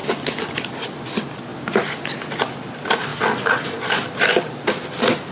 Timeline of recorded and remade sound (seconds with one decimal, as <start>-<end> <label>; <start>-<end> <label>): 0.0-5.3 recorded